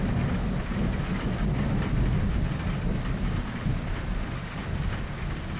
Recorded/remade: recorded